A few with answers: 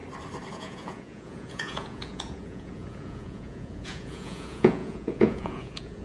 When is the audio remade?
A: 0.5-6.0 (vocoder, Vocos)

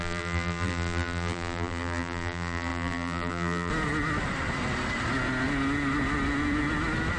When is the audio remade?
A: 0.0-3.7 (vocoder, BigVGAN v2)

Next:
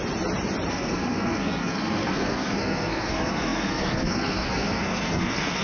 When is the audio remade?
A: 0.7-5.6 (codec, SNAC)